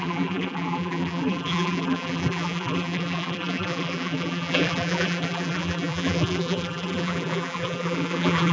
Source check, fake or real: fake